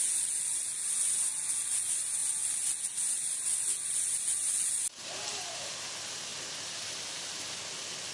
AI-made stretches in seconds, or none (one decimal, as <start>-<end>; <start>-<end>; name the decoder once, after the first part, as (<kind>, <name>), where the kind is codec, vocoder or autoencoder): none